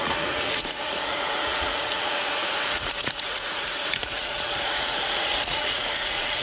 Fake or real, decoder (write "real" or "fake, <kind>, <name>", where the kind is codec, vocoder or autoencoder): fake, vocoder, Vocos